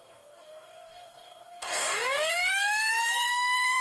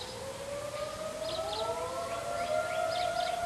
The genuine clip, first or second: second